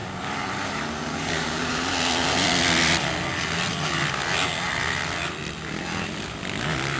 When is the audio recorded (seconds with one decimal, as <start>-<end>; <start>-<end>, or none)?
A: 1.7-7.0